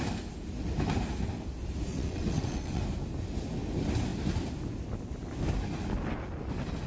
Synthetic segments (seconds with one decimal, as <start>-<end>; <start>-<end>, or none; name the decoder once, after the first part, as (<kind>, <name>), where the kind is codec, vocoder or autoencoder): 1.9-2.8 (vocoder, WaveNeXt)